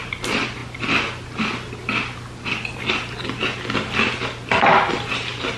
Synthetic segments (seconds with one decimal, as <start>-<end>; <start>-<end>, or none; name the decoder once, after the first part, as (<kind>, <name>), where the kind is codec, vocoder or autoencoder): none